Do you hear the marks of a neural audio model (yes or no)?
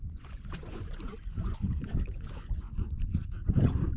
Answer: yes